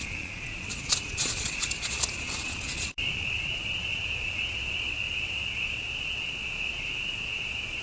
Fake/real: fake